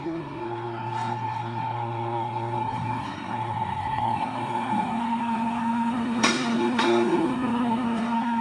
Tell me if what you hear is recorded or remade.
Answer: remade